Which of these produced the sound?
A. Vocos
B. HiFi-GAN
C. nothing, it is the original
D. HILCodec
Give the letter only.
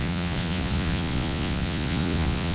A